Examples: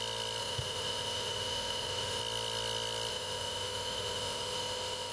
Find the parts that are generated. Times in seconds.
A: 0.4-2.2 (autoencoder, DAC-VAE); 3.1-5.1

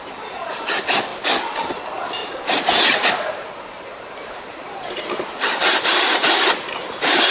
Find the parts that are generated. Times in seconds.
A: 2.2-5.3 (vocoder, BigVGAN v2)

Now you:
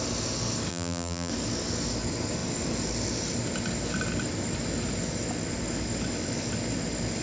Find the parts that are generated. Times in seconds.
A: 0.7-1.3 (vocoder, BigVGAN v2)

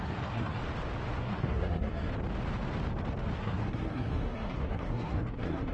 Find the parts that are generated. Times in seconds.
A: 0.0-0.6 (codec, SNAC); 1.2-2.1; 3.4-5.7

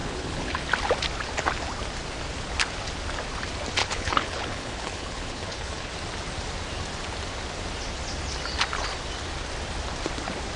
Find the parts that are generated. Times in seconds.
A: 0.0-0.6 (codec, HILCodec); 3.8-5.9

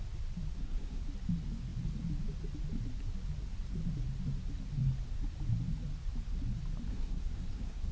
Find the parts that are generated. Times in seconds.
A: 0.5-1.0 (codec, SNAC); 6.9-7.9

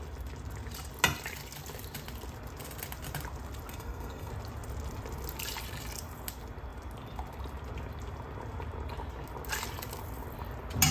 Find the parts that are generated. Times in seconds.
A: 3.7-4.3 (codec, SNAC)

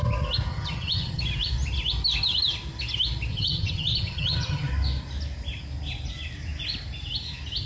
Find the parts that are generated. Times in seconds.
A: 0.5-1.2 (vocoder, HiFi-GAN); 3.3-4.7